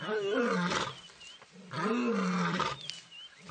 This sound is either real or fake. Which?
real